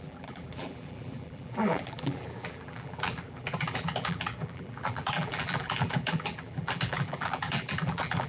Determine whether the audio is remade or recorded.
remade